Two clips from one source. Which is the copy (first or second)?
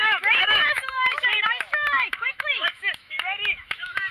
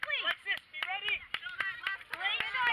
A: first